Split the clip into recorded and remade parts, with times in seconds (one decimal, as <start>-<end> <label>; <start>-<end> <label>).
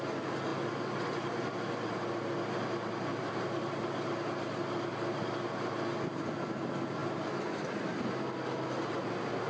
0.0-9.5 recorded